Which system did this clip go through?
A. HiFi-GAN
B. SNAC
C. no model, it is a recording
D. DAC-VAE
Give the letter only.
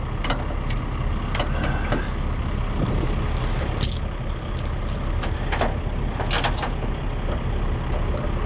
C